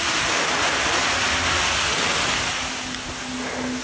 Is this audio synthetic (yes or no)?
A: no